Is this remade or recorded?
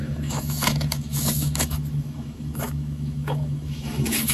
remade